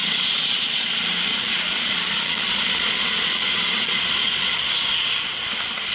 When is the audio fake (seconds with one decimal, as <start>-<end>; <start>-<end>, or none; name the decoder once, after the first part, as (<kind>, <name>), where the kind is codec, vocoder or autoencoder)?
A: 0.0-0.9 (vocoder, Vocos); 1.3-4.7